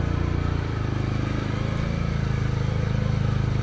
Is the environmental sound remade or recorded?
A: recorded